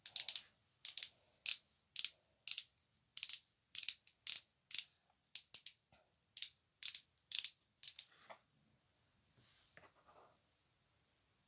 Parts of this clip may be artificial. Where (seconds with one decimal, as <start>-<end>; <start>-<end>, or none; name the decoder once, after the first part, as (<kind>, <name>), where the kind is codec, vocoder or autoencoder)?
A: 3.1-4.1 (vocoder, BigVGAN v2); 5.9-10.1